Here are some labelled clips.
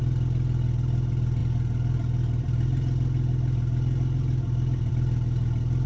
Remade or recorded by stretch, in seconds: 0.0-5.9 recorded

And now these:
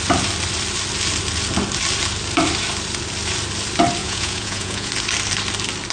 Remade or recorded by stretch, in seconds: 0.0-4.0 recorded; 4.0-4.9 remade; 4.9-5.9 recorded